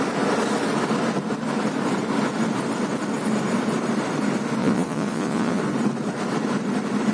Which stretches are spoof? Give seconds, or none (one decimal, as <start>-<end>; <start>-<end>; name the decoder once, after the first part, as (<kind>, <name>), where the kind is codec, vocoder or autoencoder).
4.6-5.6 (vocoder, Vocos)